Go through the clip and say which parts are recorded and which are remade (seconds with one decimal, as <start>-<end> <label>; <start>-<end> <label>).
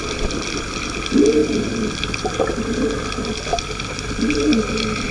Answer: 0.0-3.5 recorded; 3.5-5.1 remade